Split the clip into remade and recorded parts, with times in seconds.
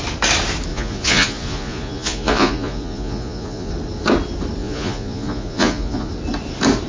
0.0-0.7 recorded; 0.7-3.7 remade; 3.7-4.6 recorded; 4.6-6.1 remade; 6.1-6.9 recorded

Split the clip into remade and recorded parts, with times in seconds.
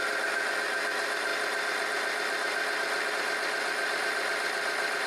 0.0-5.1 recorded